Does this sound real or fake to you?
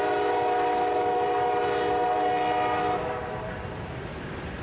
real